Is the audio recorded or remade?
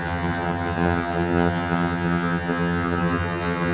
remade